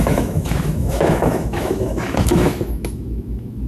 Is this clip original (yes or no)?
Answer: no